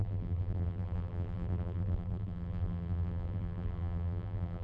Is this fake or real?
fake